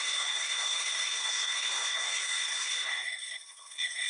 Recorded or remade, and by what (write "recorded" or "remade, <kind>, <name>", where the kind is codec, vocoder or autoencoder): remade, codec, SNAC